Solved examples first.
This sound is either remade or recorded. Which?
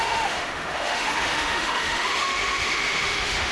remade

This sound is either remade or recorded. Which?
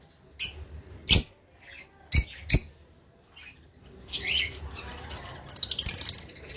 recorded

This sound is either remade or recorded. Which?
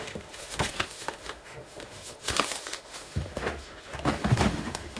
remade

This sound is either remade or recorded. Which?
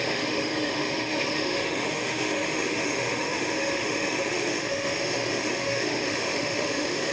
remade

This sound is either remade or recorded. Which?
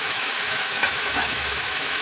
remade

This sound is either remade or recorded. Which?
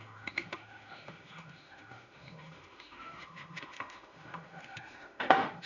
remade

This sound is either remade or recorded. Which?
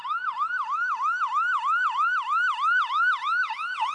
recorded